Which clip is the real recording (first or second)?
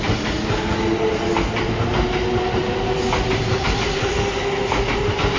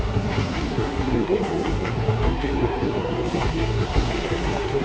first